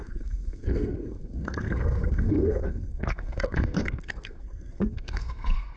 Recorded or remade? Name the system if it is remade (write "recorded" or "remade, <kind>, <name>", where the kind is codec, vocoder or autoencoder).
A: remade, codec, SNAC